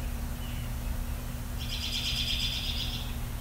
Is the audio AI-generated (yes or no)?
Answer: no